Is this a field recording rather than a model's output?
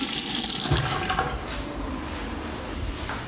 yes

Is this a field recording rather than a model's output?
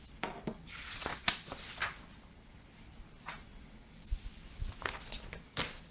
yes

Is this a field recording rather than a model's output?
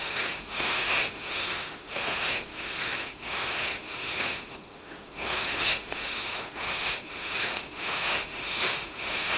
no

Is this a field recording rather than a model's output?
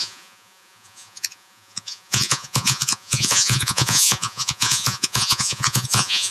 no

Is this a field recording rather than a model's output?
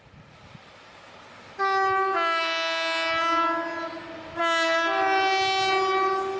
yes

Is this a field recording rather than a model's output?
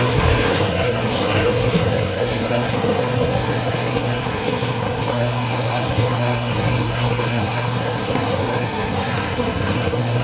no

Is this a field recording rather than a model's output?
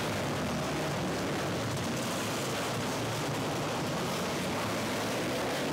yes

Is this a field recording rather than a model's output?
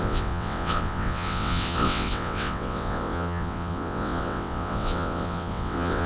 no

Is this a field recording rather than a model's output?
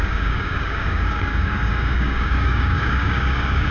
no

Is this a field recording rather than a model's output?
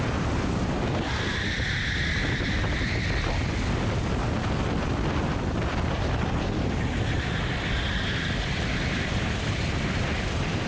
yes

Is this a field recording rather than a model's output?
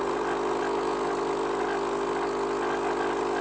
yes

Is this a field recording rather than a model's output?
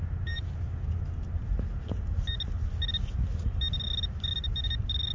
yes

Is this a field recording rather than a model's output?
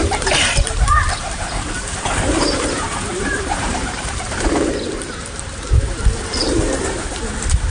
no